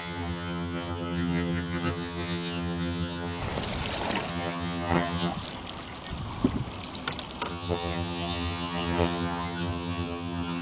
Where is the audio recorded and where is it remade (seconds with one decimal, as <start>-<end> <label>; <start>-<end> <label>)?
0.0-3.4 remade; 3.4-4.3 recorded; 4.3-5.3 remade; 5.3-7.5 recorded; 7.5-10.6 remade